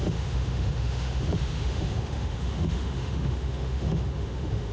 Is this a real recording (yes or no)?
no